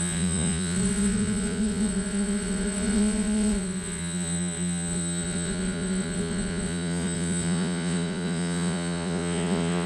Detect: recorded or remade remade